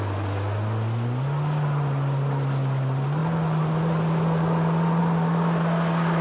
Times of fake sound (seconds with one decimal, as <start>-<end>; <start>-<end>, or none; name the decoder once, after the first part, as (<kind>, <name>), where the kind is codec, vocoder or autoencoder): none

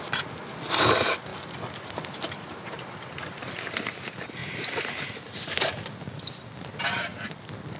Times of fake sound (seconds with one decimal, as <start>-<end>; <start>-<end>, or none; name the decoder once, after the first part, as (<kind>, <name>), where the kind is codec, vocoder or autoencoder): none

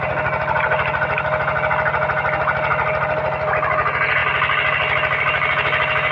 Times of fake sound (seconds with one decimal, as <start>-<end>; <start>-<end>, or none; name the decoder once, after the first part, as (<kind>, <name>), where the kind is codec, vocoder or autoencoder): none

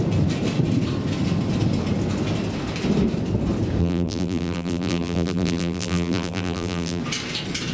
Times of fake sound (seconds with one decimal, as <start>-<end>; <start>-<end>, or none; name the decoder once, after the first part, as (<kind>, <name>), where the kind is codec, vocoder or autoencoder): 3.8-7.0 (vocoder, BigVGAN v2)

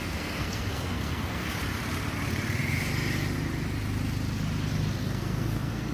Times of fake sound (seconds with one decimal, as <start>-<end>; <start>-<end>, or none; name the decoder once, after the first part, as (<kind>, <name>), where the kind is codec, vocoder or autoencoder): 0.0-1.5 (codec, SNAC); 5.0-5.9

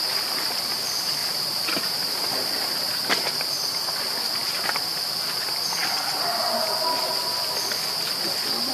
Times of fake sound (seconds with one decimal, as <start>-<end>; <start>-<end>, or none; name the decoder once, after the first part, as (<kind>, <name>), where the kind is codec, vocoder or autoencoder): 1.2-3.1 (vocoder, BigVGAN v2)